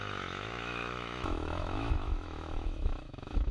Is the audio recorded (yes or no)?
no